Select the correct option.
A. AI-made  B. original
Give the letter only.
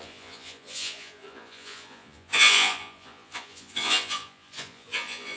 A